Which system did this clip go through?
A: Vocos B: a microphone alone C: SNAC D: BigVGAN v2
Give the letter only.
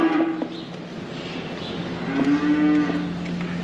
B